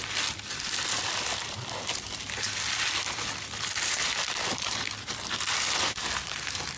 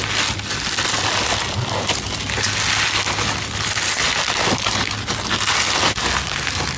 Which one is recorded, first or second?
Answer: second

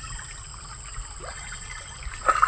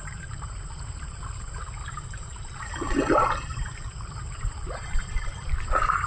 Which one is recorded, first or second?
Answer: first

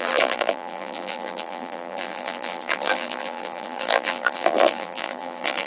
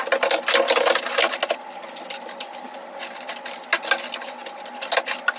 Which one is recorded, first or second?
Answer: second